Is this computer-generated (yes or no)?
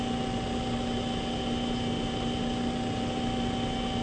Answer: no